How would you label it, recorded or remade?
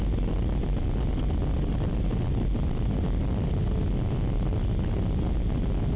recorded